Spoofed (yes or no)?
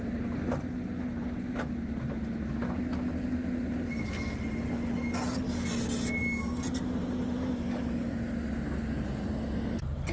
no